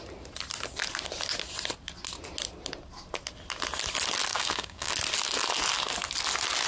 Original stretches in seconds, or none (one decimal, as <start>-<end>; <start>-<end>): 0.0-4.3; 4.9-6.7